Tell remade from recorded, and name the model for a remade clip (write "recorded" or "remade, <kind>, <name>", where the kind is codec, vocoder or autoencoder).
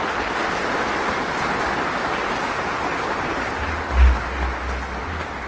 recorded